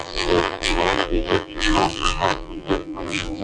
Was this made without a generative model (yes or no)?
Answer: no